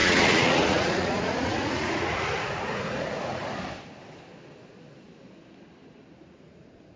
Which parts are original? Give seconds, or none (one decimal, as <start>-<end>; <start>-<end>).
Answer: 3.4-6.2